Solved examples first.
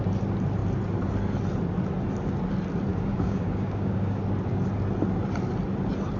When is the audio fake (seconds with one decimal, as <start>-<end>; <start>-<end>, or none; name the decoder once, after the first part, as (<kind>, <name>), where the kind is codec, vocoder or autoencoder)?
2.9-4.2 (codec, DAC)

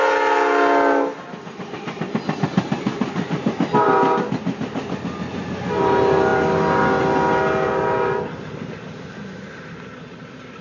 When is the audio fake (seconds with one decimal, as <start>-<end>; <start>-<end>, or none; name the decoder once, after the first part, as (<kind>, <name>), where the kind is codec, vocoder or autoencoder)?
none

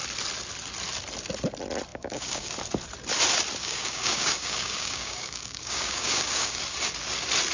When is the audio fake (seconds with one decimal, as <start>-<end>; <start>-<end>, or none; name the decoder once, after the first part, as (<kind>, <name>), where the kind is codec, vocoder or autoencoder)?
1.9-2.5 (codec, DAC); 3.6-6.6

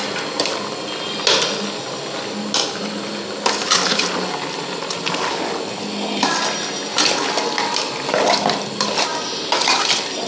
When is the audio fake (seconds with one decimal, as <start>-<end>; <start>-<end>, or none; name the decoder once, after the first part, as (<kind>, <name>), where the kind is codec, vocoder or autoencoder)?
none